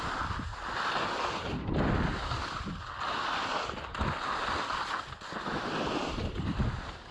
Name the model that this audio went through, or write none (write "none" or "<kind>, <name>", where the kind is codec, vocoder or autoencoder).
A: none